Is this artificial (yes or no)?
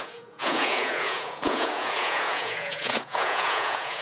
yes